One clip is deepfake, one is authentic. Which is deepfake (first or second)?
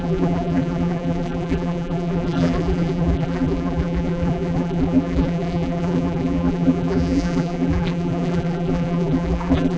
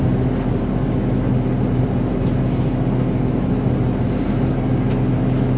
first